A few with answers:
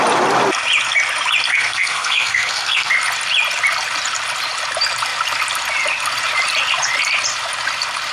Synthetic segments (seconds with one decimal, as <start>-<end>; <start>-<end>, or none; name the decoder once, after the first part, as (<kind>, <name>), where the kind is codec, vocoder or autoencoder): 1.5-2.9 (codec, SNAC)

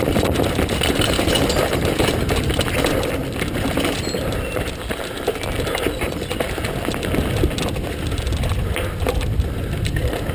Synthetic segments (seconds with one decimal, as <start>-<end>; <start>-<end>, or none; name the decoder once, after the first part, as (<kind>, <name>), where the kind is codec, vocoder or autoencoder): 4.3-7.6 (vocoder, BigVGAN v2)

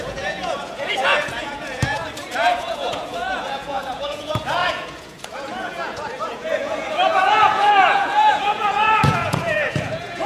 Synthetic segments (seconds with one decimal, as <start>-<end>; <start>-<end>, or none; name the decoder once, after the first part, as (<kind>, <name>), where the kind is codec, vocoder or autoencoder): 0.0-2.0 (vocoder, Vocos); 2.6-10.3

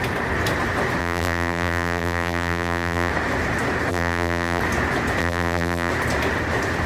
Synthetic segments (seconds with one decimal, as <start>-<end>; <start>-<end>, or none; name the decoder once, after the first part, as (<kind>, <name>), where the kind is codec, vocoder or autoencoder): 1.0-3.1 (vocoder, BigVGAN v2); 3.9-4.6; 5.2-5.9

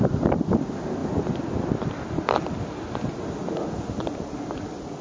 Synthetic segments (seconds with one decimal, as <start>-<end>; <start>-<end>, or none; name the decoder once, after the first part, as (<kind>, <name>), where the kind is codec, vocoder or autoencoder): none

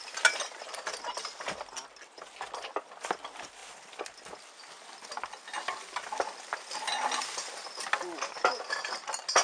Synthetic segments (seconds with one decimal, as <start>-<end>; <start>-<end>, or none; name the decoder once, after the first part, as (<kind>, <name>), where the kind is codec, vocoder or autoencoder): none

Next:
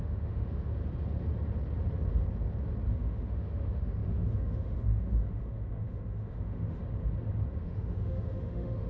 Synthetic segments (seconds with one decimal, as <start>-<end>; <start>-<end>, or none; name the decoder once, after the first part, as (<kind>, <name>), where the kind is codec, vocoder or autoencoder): 0.0-0.8 (autoencoder, DAC-VAE); 2.9-6.8; 7.6-8.9

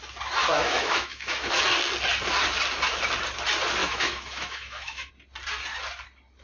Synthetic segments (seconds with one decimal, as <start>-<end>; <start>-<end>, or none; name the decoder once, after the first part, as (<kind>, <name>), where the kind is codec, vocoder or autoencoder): 0.4-1.6 (autoencoder, DAC-VAE); 3.8-5.1